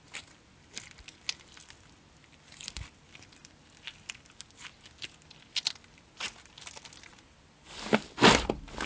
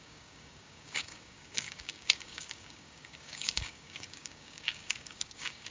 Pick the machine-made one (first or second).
second